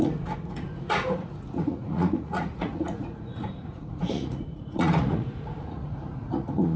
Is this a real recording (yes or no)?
no